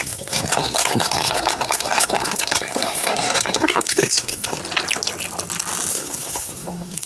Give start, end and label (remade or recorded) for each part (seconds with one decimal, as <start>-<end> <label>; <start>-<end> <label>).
0.0-4.6 remade; 4.6-5.9 recorded; 5.9-7.1 remade